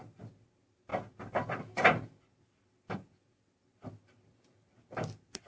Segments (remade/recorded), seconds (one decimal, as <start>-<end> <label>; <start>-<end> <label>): 0.0-5.5 recorded